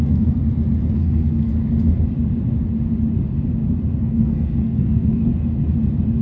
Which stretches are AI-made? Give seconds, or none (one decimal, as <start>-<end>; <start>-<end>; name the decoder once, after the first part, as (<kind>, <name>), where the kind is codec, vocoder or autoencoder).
0.0-0.4 (codec, SNAC); 0.9-1.5; 4.0-5.3

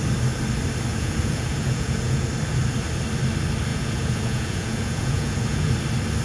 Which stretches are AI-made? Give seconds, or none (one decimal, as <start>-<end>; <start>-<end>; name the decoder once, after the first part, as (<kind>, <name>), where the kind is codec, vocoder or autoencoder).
0.9-2.3 (vocoder, Vocos); 3.7-5.7

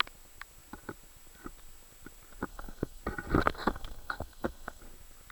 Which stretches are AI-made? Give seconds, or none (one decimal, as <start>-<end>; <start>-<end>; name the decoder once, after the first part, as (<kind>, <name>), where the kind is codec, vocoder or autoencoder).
2.5-3.0 (codec, SNAC); 3.4-4.8

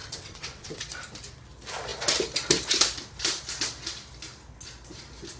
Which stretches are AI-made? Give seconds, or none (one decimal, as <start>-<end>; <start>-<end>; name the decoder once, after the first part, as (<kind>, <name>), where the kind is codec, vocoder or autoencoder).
0.0-0.8 (vocoder, WaveNeXt)

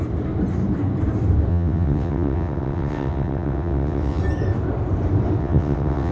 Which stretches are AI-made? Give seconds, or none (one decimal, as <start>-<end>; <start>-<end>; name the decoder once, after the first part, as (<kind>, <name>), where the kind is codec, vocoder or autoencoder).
1.5-4.2 (vocoder, WaveNeXt); 5.4-6.1

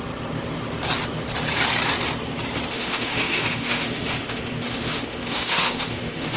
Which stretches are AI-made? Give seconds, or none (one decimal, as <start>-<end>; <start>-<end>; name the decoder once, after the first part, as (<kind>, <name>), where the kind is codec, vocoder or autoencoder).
2.7-6.4 (autoencoder, DAC-VAE)